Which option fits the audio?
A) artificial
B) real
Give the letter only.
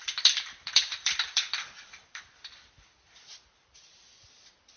A